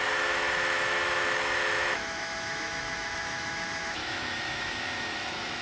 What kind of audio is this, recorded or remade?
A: remade